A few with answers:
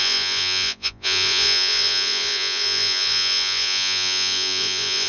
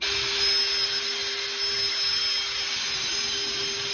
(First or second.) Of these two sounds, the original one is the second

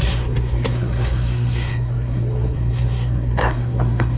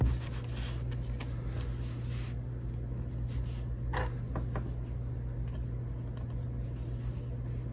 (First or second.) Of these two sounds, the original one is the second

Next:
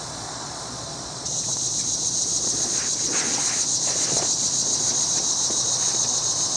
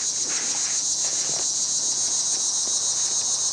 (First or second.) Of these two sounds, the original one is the second